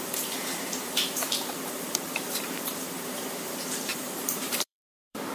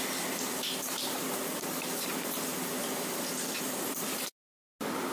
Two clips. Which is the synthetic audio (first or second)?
first